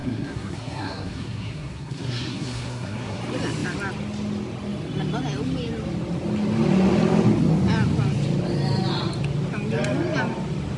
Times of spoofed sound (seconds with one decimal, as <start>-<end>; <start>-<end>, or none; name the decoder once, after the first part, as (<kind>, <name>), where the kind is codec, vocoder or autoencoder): 0.0-3.2 (codec, SNAC)